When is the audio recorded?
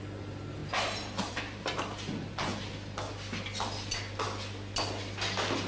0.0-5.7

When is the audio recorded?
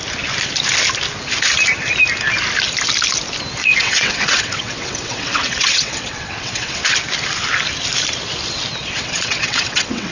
0.0-3.6; 6.8-8.8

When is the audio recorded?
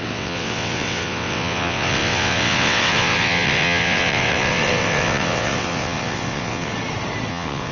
6.7-7.3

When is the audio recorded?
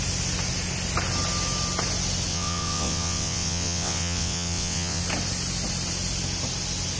0.0-2.3; 5.0-7.0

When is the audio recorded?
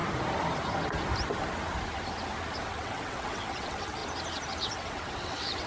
0.0-2.6; 4.0-4.6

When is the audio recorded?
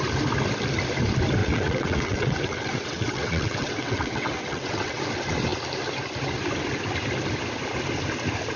0.0-1.4; 5.0-8.6